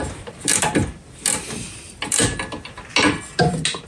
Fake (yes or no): no